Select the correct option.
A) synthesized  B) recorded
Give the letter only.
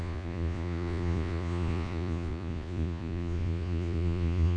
A